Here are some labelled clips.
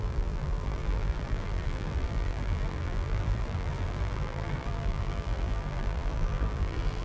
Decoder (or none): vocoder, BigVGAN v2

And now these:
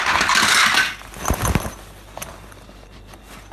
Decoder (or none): none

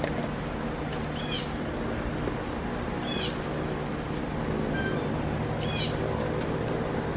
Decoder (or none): none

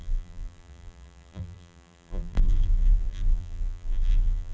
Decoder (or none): vocoder, BigVGAN v2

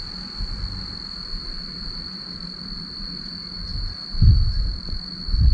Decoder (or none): vocoder, BigVGAN v2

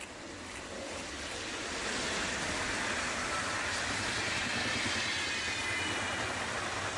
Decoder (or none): none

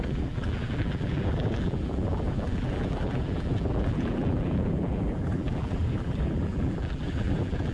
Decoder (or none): vocoder, BigVGAN v2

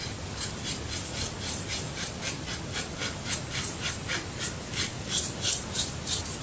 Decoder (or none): none